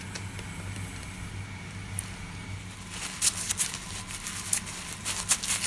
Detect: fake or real real